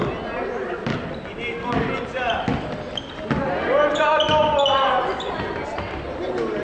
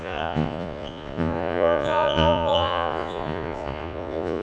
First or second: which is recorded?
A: first